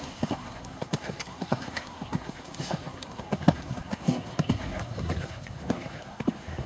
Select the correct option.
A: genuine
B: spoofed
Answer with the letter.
B